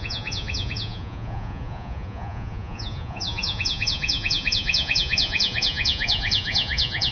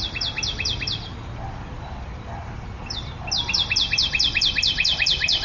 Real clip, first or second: second